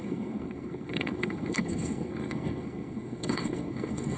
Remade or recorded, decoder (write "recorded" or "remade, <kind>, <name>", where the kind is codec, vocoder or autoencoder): remade, codec, SNAC